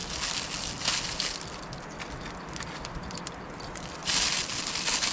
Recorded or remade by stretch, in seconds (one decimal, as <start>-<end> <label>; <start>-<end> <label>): 0.0-5.1 recorded

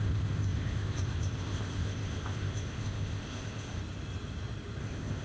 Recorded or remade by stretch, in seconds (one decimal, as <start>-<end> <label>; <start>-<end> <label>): 0.0-3.8 remade; 3.8-4.8 recorded; 4.8-5.2 remade

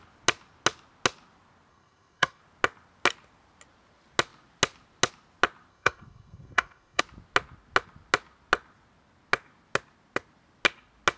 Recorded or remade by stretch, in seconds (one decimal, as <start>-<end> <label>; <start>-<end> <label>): 0.0-1.7 recorded; 1.7-2.4 remade; 2.4-5.7 recorded; 5.7-7.0 remade; 7.0-11.2 recorded

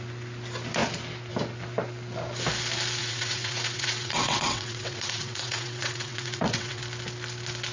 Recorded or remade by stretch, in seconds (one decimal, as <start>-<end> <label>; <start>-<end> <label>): 0.0-3.0 recorded; 3.0-6.8 remade; 6.8-7.7 recorded